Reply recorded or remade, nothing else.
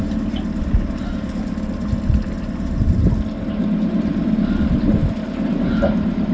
recorded